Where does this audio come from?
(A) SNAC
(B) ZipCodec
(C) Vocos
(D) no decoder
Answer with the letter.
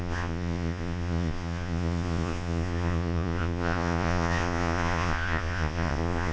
C